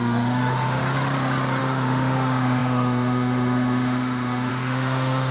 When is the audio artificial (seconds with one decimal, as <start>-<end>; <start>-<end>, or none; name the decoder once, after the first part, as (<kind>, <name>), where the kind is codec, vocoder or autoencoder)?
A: 0.0-0.8 (autoencoder, DAC-VAE); 1.6-5.3